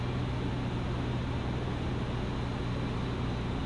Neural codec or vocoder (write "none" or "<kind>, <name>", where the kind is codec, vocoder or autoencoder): none